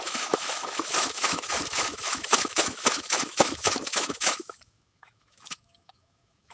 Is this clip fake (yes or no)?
yes